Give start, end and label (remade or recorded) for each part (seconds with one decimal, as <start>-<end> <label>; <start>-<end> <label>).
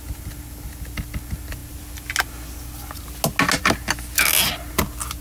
0.0-5.2 recorded